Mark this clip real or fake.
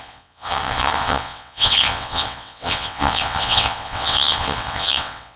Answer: fake